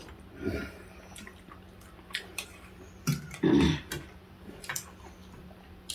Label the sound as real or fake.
fake